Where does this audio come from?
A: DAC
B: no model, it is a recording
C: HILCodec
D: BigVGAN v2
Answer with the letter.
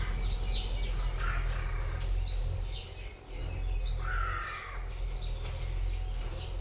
B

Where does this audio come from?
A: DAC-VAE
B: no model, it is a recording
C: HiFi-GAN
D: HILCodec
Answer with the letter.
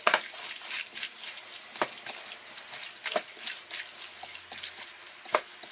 B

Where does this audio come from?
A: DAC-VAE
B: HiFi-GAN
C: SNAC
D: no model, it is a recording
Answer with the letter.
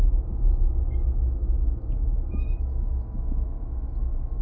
A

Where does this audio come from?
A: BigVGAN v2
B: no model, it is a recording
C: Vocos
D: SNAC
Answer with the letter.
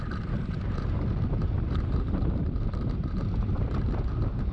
A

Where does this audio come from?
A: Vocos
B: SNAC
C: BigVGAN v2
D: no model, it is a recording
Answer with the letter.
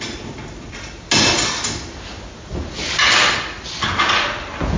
D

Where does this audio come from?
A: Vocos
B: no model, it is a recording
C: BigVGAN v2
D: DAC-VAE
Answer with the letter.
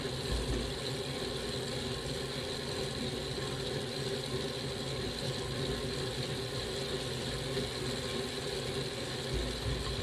B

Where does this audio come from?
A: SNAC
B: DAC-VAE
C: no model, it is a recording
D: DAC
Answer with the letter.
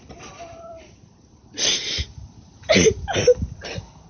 C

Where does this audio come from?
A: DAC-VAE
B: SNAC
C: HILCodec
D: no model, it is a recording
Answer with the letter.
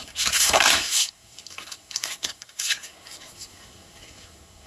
B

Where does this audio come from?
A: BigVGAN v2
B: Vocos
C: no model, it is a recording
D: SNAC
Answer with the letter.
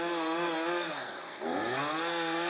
D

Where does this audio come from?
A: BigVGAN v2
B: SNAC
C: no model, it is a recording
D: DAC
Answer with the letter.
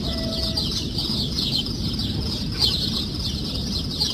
C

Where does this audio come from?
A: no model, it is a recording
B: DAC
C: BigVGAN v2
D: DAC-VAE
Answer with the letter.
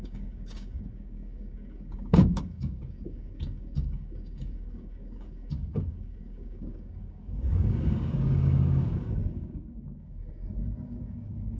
B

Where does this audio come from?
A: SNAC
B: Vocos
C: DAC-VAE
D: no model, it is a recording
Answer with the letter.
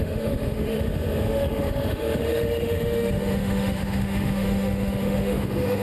C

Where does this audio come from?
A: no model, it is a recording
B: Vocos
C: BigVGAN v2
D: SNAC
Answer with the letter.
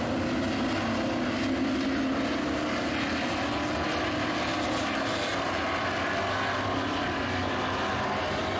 A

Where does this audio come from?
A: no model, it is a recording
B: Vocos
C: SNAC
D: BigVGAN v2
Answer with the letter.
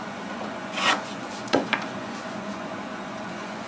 B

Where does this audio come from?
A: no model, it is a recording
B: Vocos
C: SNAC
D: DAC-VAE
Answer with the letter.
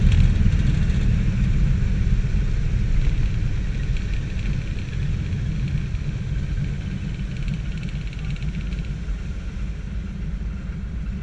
A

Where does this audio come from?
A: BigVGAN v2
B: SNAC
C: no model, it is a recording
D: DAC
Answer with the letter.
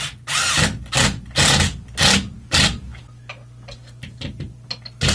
C